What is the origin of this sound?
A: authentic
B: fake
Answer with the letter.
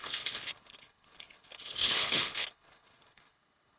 B